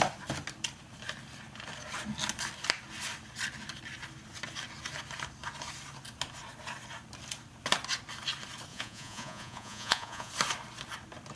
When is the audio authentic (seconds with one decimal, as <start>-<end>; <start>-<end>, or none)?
0.0-8.7; 10.3-11.4